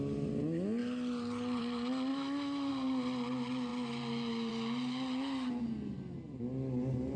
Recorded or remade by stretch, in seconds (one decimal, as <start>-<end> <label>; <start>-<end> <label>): 0.0-2.1 recorded; 2.1-2.7 remade; 2.7-7.2 recorded